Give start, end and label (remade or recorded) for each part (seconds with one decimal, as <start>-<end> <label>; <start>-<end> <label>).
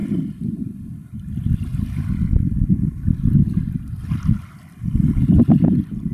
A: 0.0-1.7 remade; 1.7-4.0 recorded; 4.0-6.1 remade